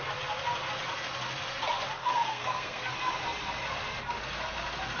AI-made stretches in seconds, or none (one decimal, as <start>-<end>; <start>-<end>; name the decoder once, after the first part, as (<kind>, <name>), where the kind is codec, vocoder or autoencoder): 2.0-2.9 (codec, SNAC)